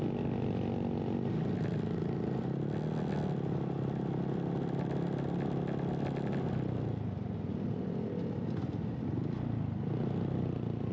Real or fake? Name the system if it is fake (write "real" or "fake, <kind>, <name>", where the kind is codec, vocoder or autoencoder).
real